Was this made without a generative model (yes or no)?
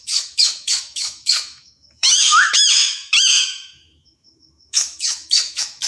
no